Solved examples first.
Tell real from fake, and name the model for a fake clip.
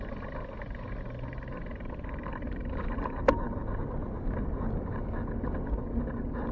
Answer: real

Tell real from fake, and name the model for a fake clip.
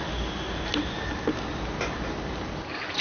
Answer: real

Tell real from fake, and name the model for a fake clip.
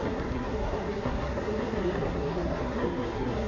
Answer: fake, codec, SNAC